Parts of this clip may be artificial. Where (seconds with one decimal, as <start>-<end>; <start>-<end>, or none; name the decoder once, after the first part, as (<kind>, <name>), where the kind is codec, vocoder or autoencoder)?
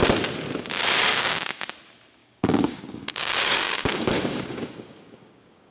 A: 1.1-1.7 (codec, DAC); 2.2-5.7